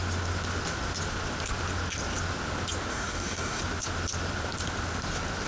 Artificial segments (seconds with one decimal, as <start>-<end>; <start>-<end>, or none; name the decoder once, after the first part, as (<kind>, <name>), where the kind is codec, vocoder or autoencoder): 2.9-3.6 (codec, DAC)